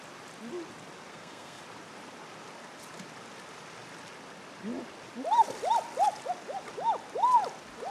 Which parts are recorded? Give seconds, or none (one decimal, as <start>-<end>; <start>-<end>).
0.0-1.1; 1.6-7.9